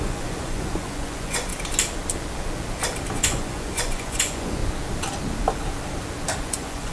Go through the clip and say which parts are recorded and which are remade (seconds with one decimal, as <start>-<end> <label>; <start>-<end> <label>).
0.0-1.5 remade; 1.5-3.1 recorded; 3.1-4.6 remade; 4.6-6.4 recorded; 6.4-6.9 remade